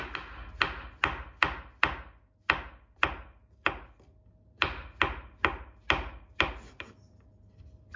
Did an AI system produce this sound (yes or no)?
no